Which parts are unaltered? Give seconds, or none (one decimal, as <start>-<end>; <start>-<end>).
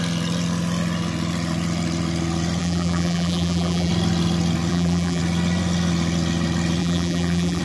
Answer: 0.0-2.6; 3.9-4.7; 5.2-6.8